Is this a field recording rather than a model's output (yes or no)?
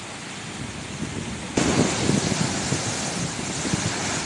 yes